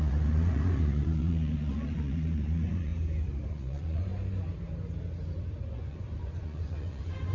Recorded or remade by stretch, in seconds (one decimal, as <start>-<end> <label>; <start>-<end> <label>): 0.0-2.9 remade; 2.9-3.5 recorded; 3.5-4.1 remade; 4.1-5.7 recorded; 5.7-7.3 remade